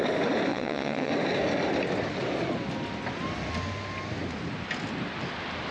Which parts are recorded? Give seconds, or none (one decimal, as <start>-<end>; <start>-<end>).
0.0-0.5; 1.1-5.7

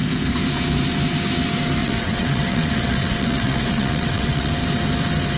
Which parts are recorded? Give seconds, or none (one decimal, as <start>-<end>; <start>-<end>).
0.0-1.8; 4.5-5.4

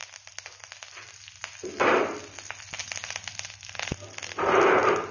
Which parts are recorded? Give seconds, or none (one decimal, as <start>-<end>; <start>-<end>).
0.0-5.1

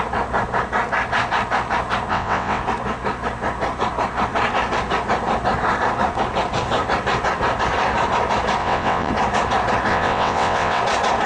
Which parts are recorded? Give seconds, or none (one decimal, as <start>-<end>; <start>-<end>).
0.0-2.1; 2.6-8.6; 9.1-9.9; 10.8-11.3

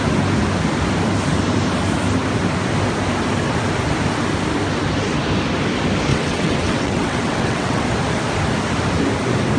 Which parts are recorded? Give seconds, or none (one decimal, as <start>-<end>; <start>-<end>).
0.0-6.1; 7.8-9.6

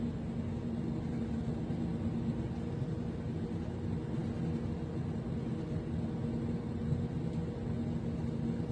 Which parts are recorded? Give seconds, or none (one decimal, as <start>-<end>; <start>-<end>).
0.0-8.7